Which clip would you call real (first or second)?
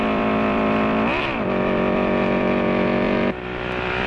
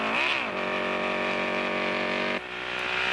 second